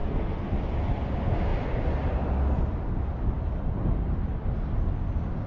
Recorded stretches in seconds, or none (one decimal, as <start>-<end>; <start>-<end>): 0.6-5.5